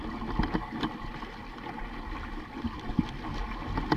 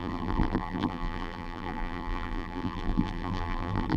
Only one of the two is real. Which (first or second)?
first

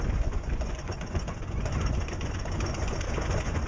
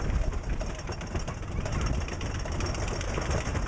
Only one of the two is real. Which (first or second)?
second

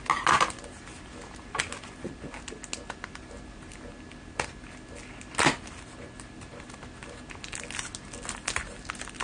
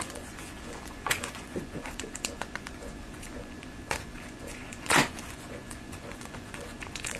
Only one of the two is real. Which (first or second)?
first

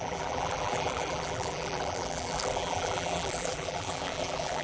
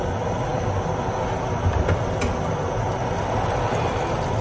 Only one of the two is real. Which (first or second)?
second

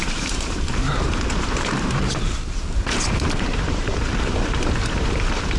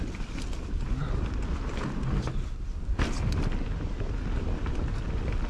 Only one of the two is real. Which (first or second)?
second